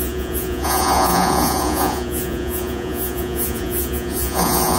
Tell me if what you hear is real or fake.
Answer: fake